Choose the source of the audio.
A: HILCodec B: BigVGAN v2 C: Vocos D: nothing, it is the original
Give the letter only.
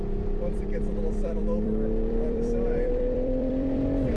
B